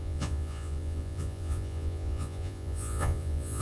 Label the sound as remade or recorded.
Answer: remade